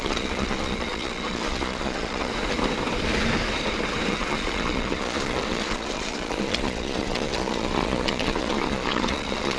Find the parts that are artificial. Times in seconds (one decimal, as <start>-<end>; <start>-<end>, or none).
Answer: 0.0-2.3; 4.1-9.6